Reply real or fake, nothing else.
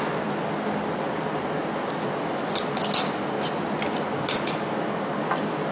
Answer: real